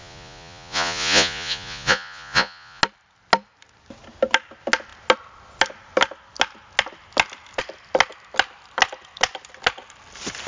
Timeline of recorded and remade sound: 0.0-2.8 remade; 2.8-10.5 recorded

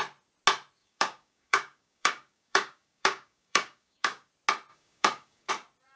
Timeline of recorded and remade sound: 0.0-0.8 recorded; 0.8-4.3 remade; 4.3-4.7 recorded; 4.7-5.5 remade; 5.5-6.0 recorded

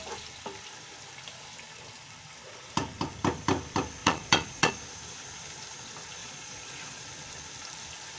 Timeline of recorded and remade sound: 0.0-4.0 recorded; 4.0-4.7 remade; 4.7-6.2 recorded; 6.2-7.0 remade; 7.0-8.2 recorded

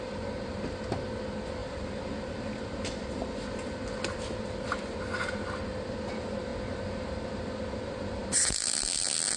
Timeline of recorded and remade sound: 0.0-9.4 recorded

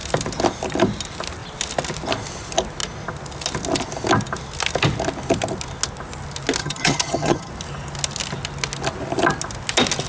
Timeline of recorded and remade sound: 0.0-6.6 recorded; 6.6-7.5 remade; 7.5-10.1 recorded

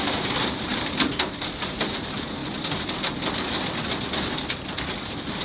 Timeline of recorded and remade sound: 0.0-5.4 recorded

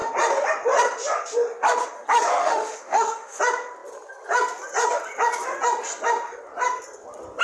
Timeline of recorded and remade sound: 0.0-2.4 recorded; 2.4-3.4 remade; 3.4-7.4 recorded